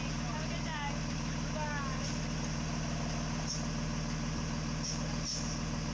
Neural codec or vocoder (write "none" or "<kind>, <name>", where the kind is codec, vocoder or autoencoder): none